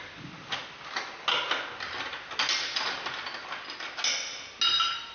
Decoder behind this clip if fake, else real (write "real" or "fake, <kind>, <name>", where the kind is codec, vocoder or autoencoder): real